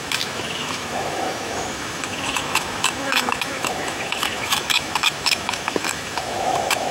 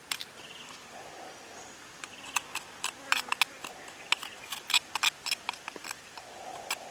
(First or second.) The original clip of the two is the second